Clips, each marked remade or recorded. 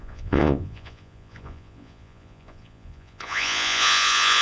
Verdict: remade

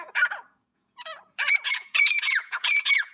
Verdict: remade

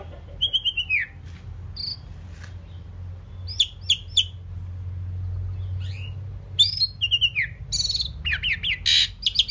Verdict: recorded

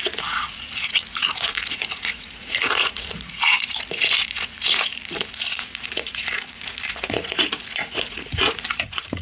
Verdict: remade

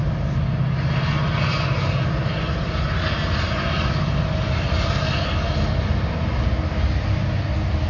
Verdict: recorded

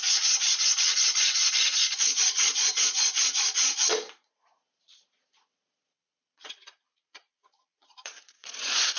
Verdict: remade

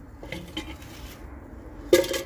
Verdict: recorded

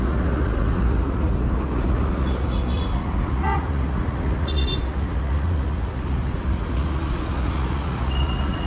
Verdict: remade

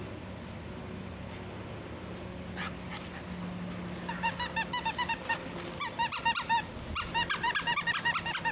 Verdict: recorded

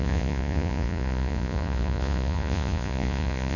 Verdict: remade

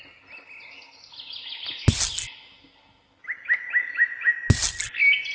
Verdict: recorded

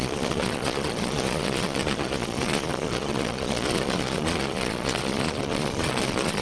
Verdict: remade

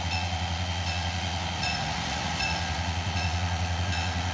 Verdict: remade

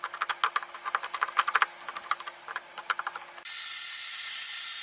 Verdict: recorded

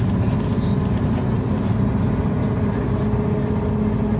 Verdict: recorded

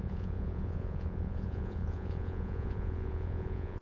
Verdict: remade